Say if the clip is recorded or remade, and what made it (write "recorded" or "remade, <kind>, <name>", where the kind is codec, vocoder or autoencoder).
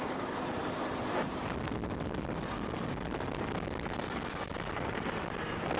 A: recorded